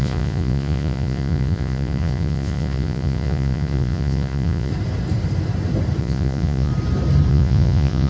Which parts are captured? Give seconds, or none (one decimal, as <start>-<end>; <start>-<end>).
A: 4.7-6.0; 6.7-7.3